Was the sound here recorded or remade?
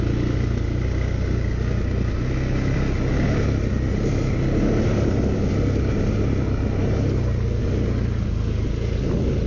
recorded